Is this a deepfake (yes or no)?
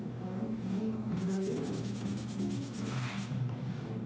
yes